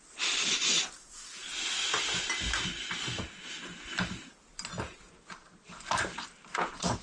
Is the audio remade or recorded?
recorded